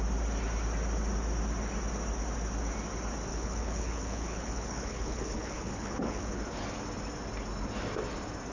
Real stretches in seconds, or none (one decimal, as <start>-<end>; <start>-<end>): 0.0-3.3; 6.4-8.5